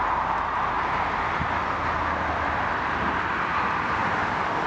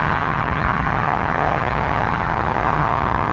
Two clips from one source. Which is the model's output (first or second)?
second